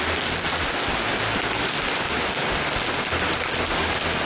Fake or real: real